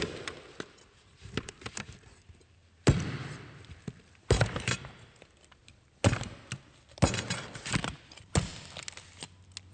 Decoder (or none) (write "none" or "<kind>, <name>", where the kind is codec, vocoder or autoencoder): none